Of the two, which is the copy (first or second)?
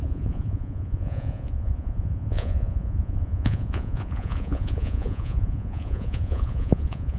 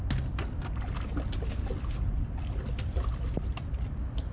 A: first